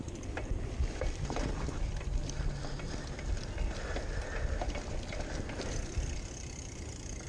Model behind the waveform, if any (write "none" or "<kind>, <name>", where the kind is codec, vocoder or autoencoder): vocoder, BigVGAN v2